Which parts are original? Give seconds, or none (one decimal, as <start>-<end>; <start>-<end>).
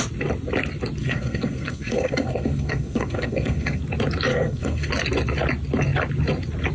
0.0-1.0; 3.8-4.3; 4.9-6.7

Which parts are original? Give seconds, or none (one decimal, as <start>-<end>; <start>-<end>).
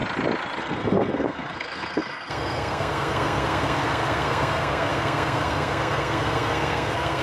0.0-0.6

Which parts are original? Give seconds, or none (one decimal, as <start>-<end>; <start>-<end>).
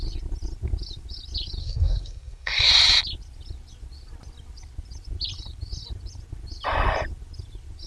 0.0-1.6; 2.7-7.9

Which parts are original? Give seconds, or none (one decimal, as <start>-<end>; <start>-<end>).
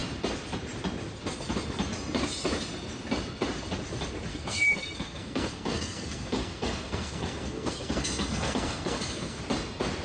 0.0-4.3; 9.4-10.0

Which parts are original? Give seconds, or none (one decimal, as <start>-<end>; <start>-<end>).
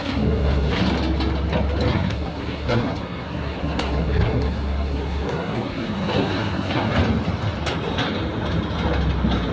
0.8-1.9; 6.9-9.5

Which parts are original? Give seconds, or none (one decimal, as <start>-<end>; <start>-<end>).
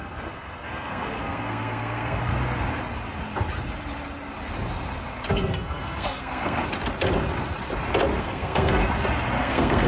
2.3-5.3; 6.6-8.2; 8.8-9.4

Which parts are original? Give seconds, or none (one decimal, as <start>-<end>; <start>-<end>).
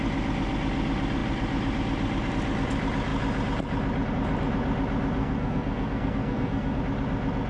0.0-5.2; 6.8-7.5